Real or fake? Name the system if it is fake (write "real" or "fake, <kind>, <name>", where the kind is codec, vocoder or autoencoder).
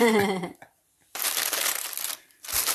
fake, vocoder, BigVGAN v2